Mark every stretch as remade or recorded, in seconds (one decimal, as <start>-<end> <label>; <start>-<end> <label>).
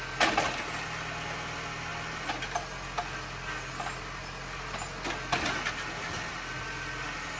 0.0-7.4 recorded